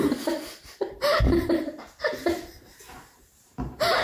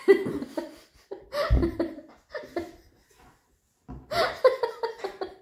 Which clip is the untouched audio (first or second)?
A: second